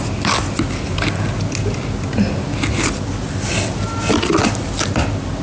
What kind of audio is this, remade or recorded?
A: recorded